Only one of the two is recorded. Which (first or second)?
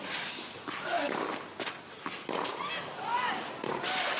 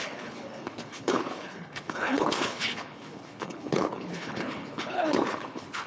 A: first